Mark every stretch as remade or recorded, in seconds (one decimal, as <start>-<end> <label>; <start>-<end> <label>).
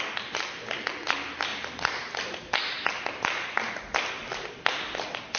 0.0-5.4 recorded